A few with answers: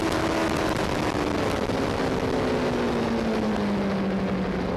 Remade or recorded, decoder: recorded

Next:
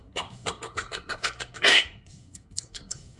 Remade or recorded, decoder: remade, codec, SNAC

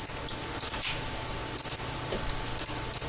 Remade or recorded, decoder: recorded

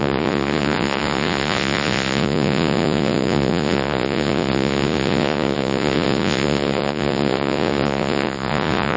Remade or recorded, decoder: remade, vocoder, Vocos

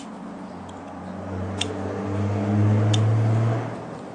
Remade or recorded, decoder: recorded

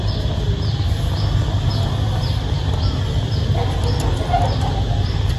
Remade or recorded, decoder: recorded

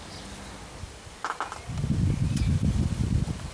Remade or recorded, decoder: recorded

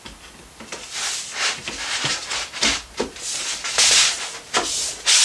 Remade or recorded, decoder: recorded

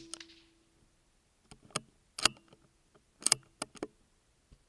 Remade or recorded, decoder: recorded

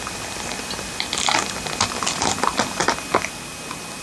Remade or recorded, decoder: remade, vocoder, BigVGAN v2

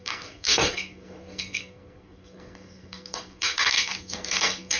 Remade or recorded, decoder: remade, codec, SNAC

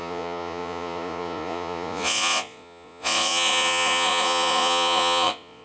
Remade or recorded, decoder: remade, vocoder, Vocos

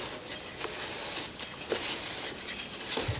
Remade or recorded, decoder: recorded